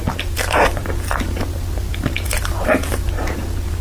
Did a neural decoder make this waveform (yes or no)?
no